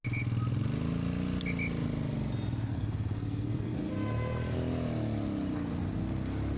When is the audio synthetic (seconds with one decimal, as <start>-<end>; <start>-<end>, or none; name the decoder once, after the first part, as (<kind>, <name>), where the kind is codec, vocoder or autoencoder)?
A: 2.7-3.9 (codec, SNAC)